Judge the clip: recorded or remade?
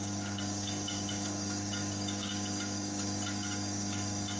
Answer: remade